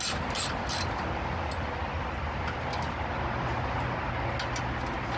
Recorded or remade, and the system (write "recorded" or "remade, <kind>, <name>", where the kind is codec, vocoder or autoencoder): recorded